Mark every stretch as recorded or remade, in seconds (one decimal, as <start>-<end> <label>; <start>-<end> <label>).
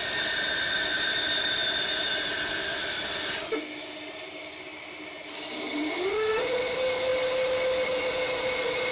0.0-8.9 recorded